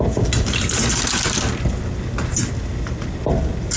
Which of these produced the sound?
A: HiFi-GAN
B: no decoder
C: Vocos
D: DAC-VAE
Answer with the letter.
B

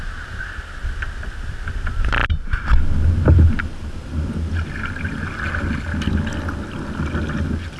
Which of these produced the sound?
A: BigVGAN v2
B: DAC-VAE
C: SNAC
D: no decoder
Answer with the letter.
D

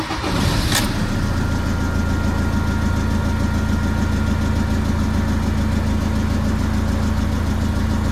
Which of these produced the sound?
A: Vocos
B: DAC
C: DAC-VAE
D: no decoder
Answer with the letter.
D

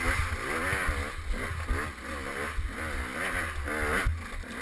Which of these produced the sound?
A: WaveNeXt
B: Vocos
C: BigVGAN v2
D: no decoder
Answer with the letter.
D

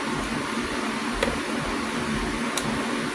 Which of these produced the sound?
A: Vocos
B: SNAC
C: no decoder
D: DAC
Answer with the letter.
C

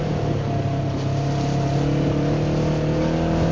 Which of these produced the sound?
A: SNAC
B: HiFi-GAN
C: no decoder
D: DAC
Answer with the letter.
C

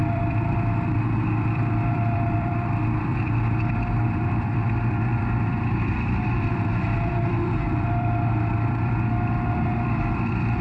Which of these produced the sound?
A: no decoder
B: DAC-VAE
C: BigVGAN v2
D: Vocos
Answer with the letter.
C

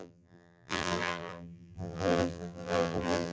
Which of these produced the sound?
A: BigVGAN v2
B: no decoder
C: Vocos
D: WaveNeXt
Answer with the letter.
A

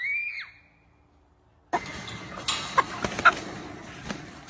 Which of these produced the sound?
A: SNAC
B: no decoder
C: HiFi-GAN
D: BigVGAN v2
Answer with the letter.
B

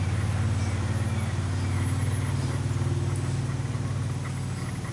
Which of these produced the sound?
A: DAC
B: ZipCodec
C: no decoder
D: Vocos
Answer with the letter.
C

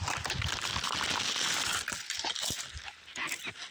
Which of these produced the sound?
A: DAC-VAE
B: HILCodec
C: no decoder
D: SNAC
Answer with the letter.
C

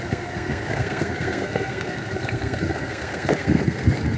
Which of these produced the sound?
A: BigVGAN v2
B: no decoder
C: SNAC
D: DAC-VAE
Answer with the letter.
C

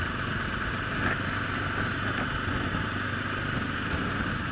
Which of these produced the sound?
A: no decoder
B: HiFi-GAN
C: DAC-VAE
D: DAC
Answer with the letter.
A